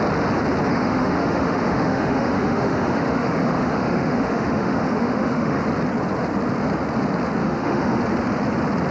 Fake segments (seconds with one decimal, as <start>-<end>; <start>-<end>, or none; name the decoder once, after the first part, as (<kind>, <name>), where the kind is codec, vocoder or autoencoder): 0.7-5.6 (autoencoder, DAC-VAE); 7.4-8.0